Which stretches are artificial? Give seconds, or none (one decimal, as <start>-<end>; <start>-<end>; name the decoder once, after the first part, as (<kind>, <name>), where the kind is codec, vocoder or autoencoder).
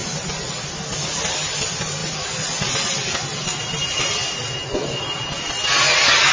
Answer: none